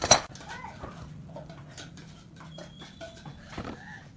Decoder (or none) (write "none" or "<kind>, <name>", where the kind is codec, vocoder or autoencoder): none